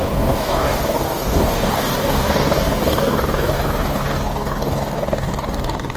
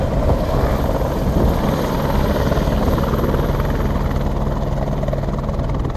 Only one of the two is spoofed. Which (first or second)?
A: first